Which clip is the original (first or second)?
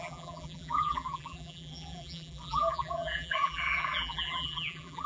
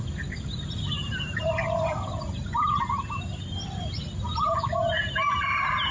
second